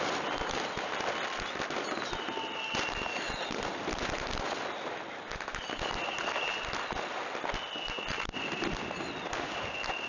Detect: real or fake real